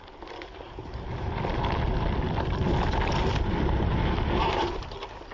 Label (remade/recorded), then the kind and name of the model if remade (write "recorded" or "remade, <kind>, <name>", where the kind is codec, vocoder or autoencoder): recorded